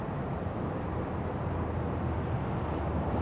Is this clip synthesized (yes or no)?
yes